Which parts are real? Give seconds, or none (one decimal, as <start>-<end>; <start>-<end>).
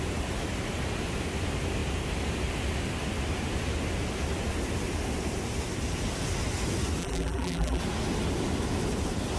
0.0-7.0; 7.8-9.4